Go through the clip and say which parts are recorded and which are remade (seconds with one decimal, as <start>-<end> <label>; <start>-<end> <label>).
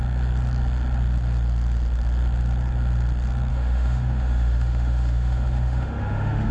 0.0-3.5 recorded; 3.5-6.5 remade